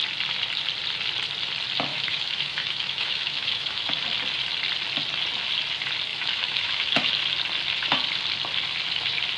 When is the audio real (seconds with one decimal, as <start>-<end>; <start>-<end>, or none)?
0.0-1.9; 3.9-6.1; 7.1-9.4